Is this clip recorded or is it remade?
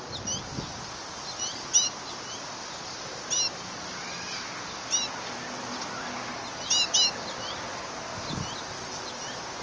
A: recorded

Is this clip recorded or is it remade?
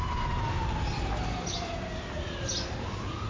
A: recorded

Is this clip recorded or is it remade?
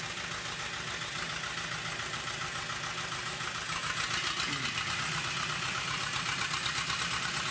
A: recorded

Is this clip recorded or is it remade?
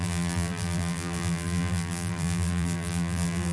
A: remade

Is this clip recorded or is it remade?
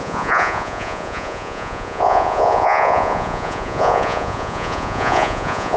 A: remade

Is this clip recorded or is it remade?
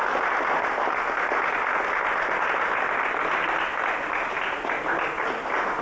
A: recorded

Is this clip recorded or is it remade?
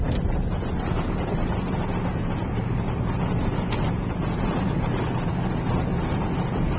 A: recorded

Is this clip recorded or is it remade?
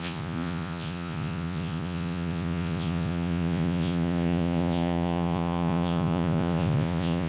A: remade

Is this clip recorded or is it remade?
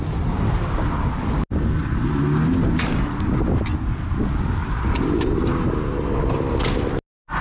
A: recorded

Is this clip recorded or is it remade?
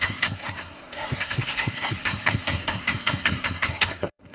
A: remade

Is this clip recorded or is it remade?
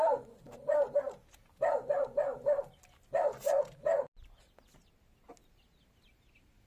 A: recorded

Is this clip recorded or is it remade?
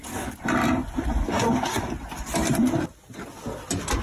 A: recorded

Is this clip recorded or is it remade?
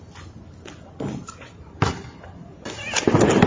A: recorded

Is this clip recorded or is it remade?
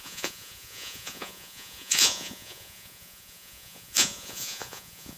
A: remade